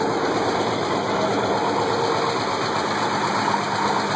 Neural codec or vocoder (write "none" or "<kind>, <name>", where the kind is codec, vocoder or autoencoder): none